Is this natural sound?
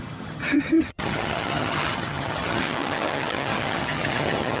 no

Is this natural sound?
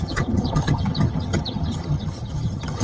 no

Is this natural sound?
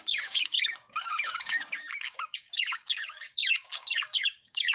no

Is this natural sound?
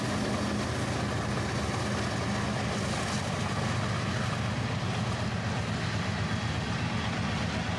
yes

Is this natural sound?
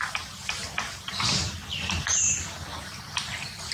yes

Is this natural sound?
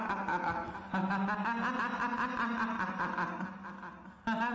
yes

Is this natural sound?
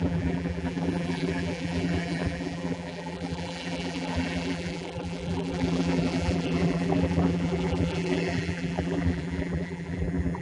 no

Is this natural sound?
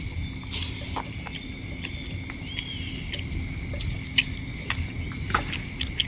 yes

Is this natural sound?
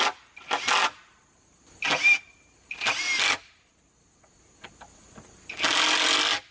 yes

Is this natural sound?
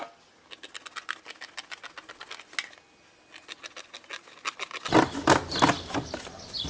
yes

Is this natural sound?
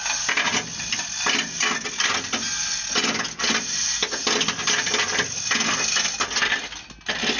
yes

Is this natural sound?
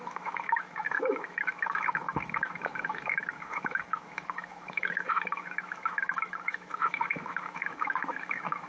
no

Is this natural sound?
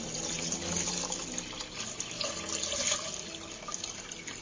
yes